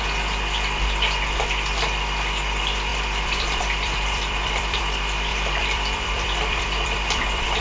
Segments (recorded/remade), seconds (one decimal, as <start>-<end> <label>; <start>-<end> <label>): 0.0-2.9 recorded; 2.9-4.8 remade; 4.8-5.3 recorded; 5.3-7.6 remade